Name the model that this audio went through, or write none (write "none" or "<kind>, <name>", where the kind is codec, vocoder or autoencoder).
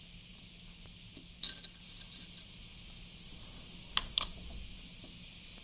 none